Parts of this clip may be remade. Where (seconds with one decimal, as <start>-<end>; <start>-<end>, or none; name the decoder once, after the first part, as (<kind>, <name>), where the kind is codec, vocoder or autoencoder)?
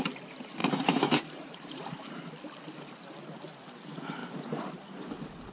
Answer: 0.6-2.2 (vocoder, BigVGAN v2); 4.2-4.9